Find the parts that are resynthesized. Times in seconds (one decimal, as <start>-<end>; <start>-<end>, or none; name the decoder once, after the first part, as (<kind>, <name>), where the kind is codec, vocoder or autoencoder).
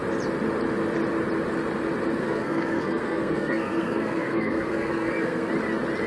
2.2-5.5 (codec, SNAC)